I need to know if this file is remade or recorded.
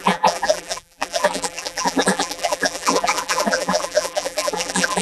remade